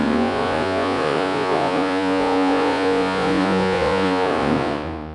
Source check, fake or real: fake